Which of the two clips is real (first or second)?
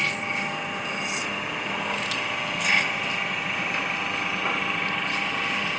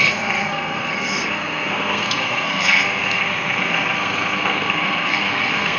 first